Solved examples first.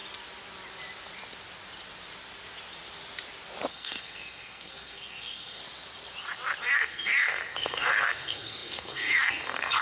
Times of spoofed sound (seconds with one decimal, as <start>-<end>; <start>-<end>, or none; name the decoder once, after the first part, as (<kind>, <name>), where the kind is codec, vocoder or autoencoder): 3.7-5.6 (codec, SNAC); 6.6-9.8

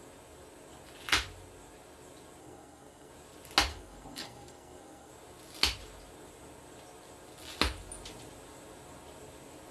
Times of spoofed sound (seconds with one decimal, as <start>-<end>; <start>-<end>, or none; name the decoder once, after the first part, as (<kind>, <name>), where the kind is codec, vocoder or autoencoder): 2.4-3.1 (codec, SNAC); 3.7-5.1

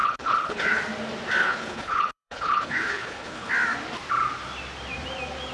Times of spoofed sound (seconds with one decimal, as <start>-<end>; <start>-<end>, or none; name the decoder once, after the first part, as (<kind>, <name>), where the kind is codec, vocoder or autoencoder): 0.0-0.8 (codec, HILCodec); 1.4-3.5

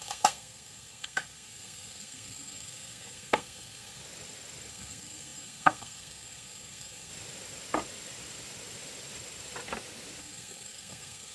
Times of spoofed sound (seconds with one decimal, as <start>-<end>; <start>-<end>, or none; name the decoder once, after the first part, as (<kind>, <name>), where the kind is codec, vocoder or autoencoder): 0.0-4.0 (codec, SNAC); 4.7-7.1; 10.2-11.3

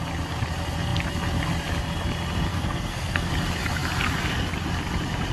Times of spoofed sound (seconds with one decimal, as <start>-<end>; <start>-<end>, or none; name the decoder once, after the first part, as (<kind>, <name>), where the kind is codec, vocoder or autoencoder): 2.5-3.3 (codec, SNAC)